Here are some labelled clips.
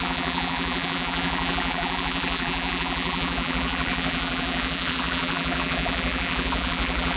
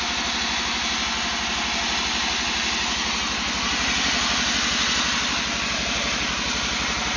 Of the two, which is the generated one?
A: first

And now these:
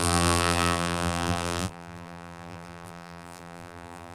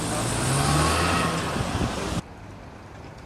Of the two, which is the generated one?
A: first